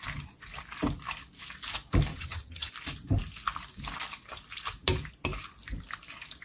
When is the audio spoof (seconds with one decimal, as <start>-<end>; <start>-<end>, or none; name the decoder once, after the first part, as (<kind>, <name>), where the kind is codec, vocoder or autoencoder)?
2.1-2.7 (vocoder, HiFi-GAN)